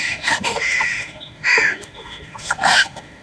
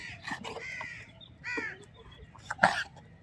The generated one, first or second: first